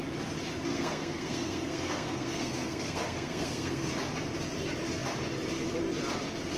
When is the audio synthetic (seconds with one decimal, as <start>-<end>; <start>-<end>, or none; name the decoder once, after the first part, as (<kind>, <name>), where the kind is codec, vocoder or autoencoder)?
0.7-3.9 (codec, SNAC)